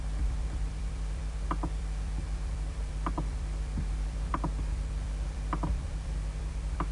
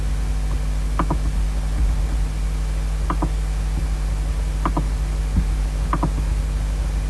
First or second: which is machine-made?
first